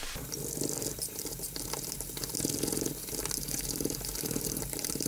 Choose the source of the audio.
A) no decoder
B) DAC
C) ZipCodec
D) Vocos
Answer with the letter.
A